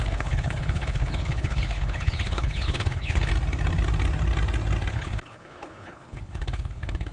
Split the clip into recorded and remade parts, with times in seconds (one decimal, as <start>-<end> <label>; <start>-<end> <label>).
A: 0.0-3.3 remade; 3.3-4.9 recorded; 4.9-7.1 remade